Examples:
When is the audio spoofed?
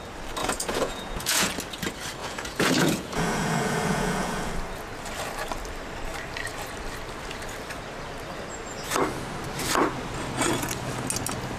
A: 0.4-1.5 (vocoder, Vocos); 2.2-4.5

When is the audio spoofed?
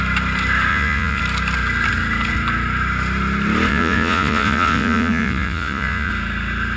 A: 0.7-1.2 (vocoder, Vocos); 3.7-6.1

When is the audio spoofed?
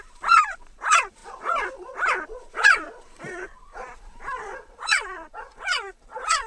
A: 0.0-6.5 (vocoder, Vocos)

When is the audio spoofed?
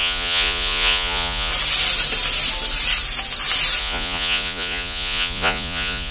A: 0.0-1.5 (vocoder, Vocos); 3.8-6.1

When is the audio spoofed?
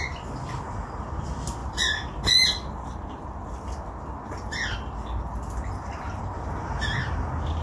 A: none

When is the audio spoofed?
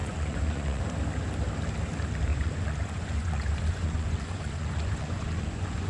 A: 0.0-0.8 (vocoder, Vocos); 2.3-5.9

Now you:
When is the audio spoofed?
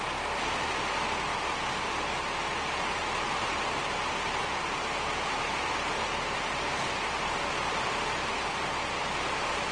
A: none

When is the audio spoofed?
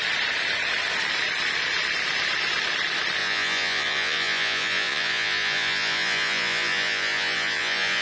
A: 3.2-8.0 (vocoder, Vocos)